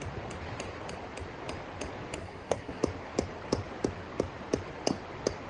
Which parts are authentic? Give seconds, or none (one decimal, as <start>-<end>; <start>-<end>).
0.0-2.2; 2.8-5.5